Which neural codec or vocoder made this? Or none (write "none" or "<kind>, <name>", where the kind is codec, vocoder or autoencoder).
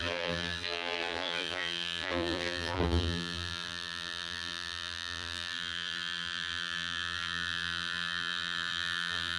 vocoder, BigVGAN v2